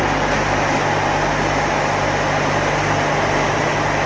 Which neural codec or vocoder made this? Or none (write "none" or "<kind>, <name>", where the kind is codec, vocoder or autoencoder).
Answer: none